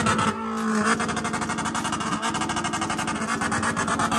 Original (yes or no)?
yes